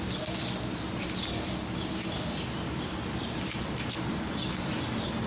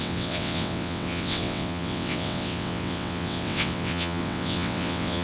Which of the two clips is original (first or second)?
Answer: first